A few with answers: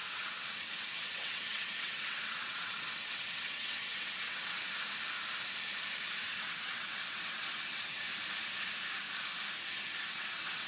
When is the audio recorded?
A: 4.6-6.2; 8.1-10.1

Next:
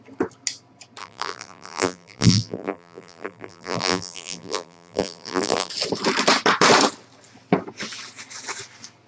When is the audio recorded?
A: 0.0-1.0; 5.7-9.1

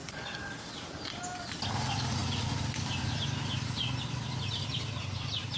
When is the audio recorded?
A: 0.0-5.6

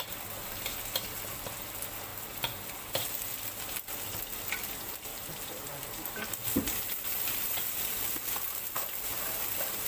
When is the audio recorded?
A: 0.0-2.1; 3.1-5.1; 5.8-9.9

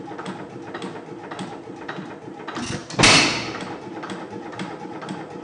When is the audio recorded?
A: 0.0-5.4